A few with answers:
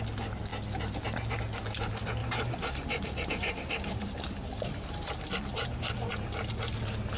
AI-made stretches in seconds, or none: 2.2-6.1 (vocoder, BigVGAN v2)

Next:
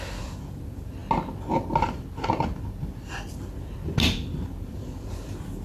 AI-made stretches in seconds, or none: none

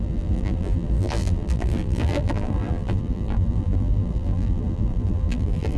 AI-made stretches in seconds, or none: 0.0-5.8 (vocoder, BigVGAN v2)

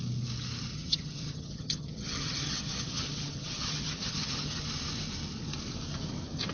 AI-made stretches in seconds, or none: 0.7-4.6 (vocoder, HiFi-GAN)

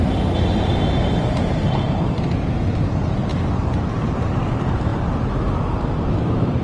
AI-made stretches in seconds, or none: 0.0-4.9 (vocoder, BigVGAN v2); 6.1-6.6

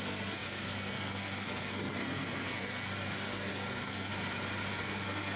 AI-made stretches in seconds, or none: 0.0-4.1 (codec, SNAC); 4.8-5.4

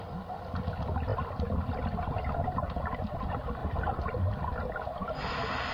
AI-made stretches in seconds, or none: none

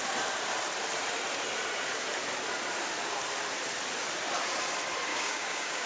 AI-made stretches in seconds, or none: 5.1-5.9 (codec, DAC)